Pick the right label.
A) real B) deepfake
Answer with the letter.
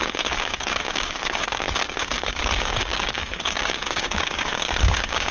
B